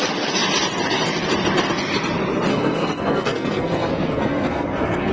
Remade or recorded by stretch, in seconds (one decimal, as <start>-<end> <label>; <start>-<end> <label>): 0.0-2.5 recorded; 2.5-5.1 remade